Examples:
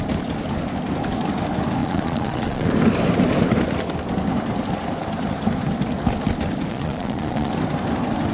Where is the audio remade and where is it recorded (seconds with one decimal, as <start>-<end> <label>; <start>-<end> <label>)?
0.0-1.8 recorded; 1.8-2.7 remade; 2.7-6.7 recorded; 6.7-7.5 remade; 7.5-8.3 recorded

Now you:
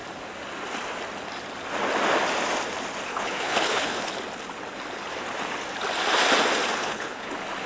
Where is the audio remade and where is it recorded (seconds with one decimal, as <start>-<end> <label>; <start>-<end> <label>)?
0.0-3.1 recorded; 3.1-4.1 remade; 4.1-6.8 recorded; 6.8-7.3 remade; 7.3-7.7 recorded

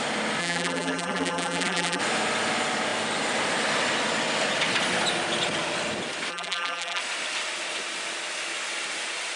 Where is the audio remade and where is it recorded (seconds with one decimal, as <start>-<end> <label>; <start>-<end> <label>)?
0.0-0.4 recorded; 0.4-2.0 remade; 2.0-6.3 recorded; 6.3-7.0 remade; 7.0-9.4 recorded

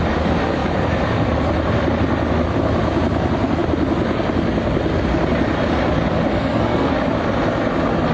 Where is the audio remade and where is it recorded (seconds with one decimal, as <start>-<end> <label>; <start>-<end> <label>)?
0.0-6.3 recorded; 6.3-6.9 remade; 6.9-8.1 recorded

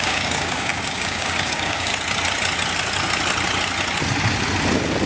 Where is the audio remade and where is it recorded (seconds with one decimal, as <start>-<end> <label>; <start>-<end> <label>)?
0.0-1.9 remade; 1.9-5.1 recorded

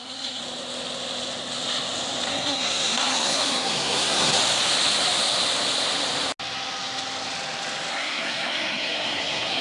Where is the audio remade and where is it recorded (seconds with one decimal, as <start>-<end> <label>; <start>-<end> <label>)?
0.0-0.4 remade; 0.4-2.3 recorded; 2.3-4.4 remade; 4.4-7.9 recorded; 7.9-9.6 remade

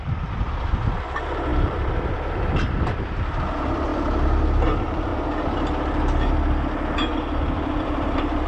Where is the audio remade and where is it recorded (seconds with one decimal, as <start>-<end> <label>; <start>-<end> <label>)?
0.0-5.1 remade; 5.1-7.8 recorded; 7.8-8.5 remade